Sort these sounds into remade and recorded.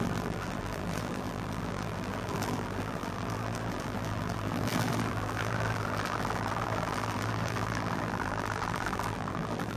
remade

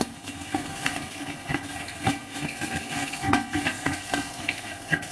remade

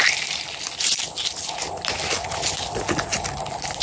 recorded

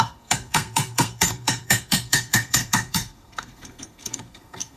remade